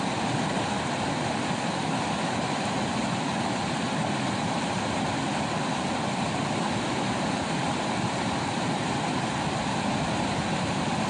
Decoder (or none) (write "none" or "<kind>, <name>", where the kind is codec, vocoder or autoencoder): none